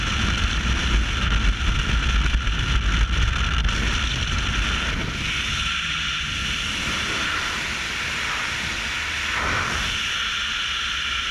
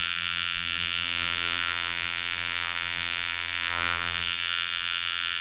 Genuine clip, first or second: first